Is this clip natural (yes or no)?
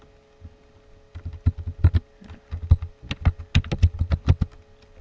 yes